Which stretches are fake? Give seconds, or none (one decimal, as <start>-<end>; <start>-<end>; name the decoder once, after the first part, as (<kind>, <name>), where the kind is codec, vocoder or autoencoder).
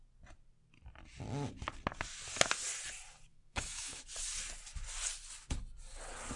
3.3-4.0 (autoencoder, DAC-VAE)